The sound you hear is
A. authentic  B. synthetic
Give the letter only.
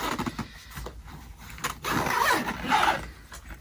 A